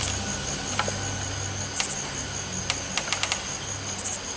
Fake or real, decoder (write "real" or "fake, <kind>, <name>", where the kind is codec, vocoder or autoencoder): real